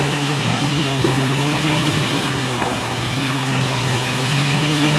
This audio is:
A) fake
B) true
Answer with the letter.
A